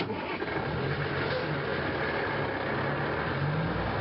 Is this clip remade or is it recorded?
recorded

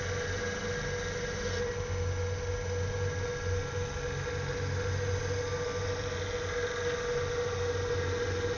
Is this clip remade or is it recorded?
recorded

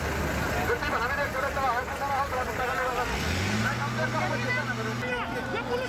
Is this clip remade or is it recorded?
recorded